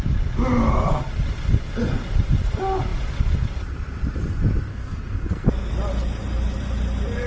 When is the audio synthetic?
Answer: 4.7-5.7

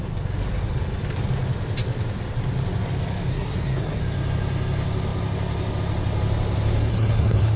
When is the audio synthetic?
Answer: 3.3-4.0; 6.9-7.6

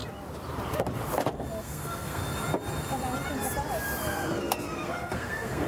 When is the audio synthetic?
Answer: 1.6-2.2; 4.0-5.7

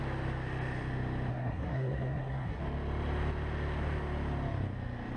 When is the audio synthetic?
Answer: 1.3-2.6

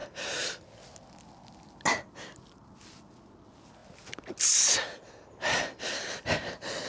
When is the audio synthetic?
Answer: none

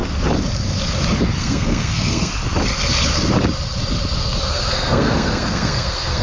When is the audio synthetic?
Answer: 1.4-2.3; 4.5-6.2

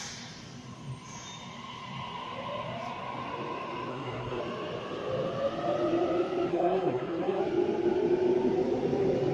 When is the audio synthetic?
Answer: 3.9-4.4; 6.5-7.4

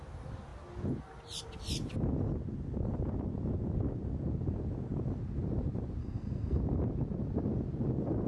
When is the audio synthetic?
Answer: 6.0-6.6